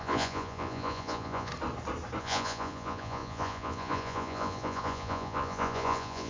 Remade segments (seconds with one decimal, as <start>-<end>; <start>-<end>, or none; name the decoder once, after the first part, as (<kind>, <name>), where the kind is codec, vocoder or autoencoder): 0.0-1.5 (vocoder, Vocos); 2.2-6.3